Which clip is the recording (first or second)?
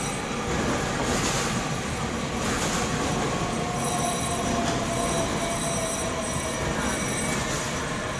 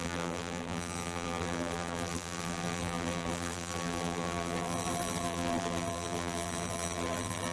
first